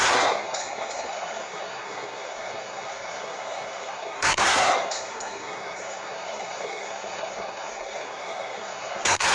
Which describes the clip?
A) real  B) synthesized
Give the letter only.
B